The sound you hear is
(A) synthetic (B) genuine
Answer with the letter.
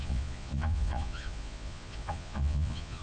A